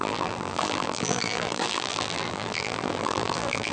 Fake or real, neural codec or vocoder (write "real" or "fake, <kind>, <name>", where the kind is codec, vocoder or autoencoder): fake, vocoder, BigVGAN v2